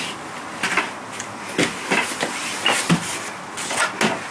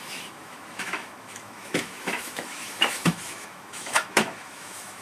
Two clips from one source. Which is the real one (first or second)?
first